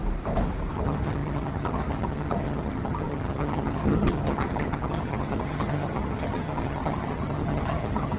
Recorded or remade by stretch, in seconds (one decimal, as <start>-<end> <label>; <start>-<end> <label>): 0.0-0.7 recorded; 0.7-8.2 remade